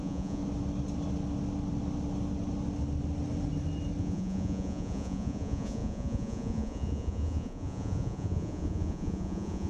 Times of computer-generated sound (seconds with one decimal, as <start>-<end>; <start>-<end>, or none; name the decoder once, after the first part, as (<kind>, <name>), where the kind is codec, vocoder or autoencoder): 0.0-0.4 (vocoder, Vocos); 4.0-9.7